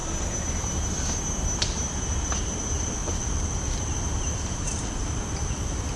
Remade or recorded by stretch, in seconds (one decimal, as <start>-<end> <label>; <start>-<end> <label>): 0.0-3.0 recorded; 3.0-4.8 remade; 4.8-6.0 recorded